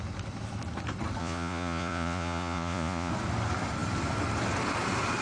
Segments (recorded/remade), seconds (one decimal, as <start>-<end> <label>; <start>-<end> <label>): 0.0-1.2 recorded; 1.2-3.1 remade; 3.1-5.2 recorded

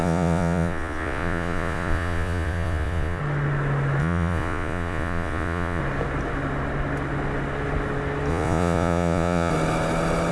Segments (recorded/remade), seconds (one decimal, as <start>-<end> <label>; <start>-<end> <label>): 0.0-3.2 remade; 3.2-4.0 recorded; 4.0-5.8 remade; 5.8-8.3 recorded; 8.3-9.5 remade; 9.5-10.3 recorded

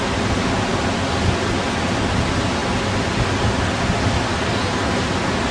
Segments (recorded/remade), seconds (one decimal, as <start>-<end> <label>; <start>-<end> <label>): 0.0-5.5 recorded

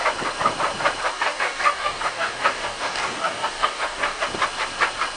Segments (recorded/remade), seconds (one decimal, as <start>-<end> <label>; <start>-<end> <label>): 0.0-1.1 recorded; 1.1-4.2 remade; 4.2-5.2 recorded

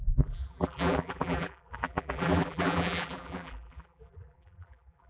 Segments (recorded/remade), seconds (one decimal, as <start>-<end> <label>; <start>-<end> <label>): 0.0-5.1 remade